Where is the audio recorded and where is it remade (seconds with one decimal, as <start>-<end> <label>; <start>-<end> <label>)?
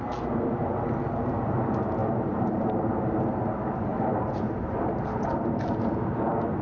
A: 0.0-2.0 recorded; 2.0-3.4 remade; 3.4-3.9 recorded; 3.9-5.7 remade; 5.7-6.6 recorded